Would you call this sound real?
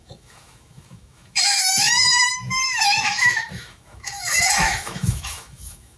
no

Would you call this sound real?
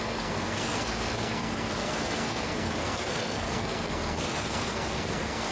no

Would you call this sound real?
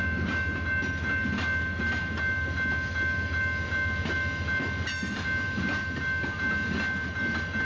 yes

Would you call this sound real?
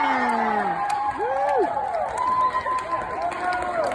yes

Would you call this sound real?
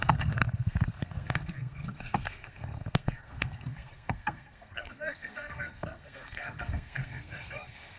no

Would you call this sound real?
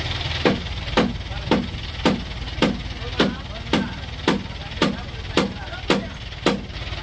yes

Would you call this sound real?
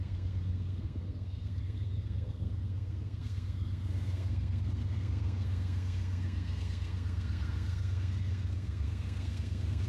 no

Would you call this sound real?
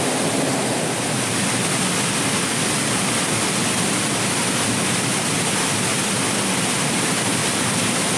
yes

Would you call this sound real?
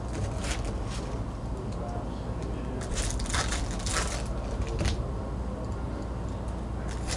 yes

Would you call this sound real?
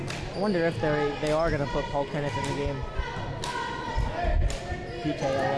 yes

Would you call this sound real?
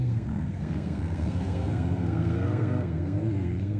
no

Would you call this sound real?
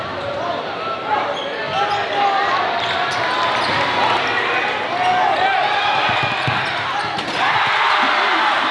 yes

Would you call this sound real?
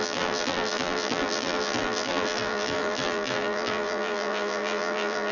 no